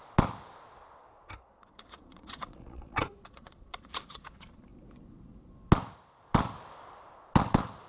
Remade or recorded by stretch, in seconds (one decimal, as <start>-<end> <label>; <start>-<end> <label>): 0.0-1.5 recorded; 1.5-4.6 remade; 4.6-7.9 recorded